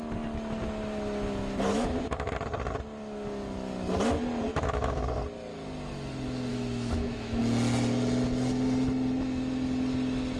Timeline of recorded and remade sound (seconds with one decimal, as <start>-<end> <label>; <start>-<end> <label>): 0.0-1.7 recorded; 1.7-2.3 remade; 2.3-4.5 recorded; 4.5-5.0 remade; 5.0-6.5 recorded; 6.5-7.4 remade; 7.4-10.4 recorded